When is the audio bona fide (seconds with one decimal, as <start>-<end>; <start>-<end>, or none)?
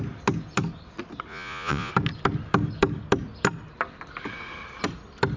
0.0-1.3; 1.9-5.4